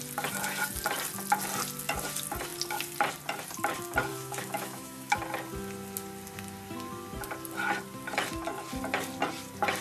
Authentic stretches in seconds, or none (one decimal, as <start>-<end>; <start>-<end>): 0.0-4.1; 5.2-9.8